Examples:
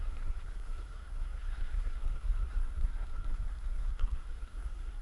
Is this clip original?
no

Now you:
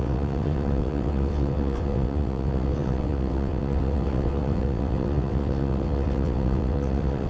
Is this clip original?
no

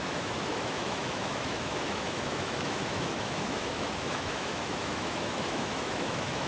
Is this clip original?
no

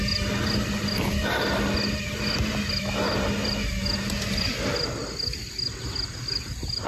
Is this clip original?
yes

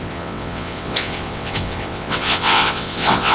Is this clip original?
no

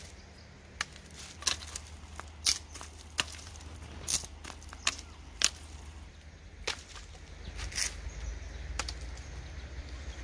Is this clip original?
yes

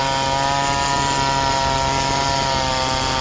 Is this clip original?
yes